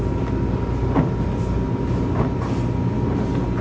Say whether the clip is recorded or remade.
recorded